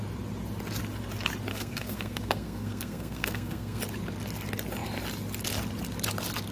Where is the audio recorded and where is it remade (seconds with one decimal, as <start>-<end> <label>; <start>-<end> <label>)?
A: 0.0-1.5 recorded; 1.5-3.8 remade; 3.8-6.5 recorded